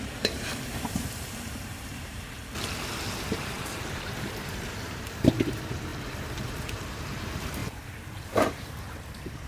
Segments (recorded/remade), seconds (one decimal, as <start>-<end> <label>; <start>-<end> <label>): 0.0-2.4 remade; 2.4-2.9 recorded; 2.9-9.5 remade